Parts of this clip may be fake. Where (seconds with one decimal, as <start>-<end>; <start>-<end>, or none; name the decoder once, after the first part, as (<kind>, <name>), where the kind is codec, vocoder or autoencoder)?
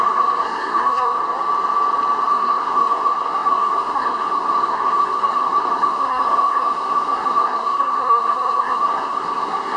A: 0.0-1.2 (codec, SNAC); 2.3-9.8